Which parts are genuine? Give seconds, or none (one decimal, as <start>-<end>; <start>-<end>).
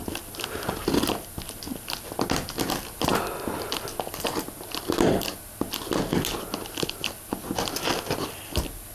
0.0-8.9